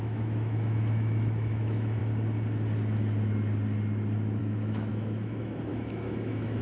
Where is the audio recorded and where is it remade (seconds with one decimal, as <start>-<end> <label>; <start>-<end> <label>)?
0.0-2.0 remade; 2.0-4.4 recorded; 4.4-6.6 remade